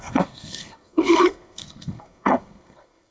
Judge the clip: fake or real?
fake